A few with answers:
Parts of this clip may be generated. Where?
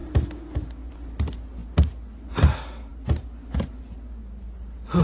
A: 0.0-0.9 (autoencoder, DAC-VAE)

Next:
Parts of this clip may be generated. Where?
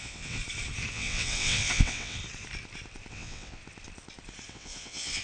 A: 0.0-0.4 (vocoder, WaveNeXt); 0.9-2.2; 3.1-3.6; 4.5-5.2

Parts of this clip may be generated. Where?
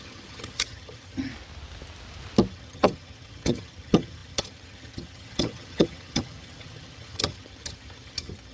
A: 0.0-1.3 (vocoder, HiFi-GAN); 2.5-8.5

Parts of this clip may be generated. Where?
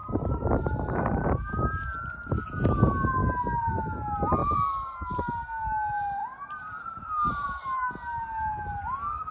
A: 0.0-1.8 (vocoder, BigVGAN v2); 4.4-5.2; 6.2-7.9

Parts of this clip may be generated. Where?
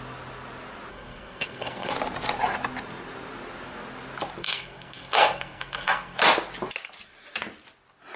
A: 0.9-1.9 (codec, SNAC); 4.4-6.2